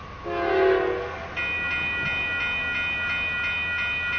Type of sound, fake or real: real